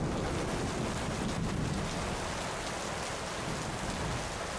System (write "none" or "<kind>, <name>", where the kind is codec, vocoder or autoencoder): none